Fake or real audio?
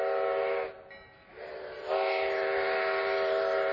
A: real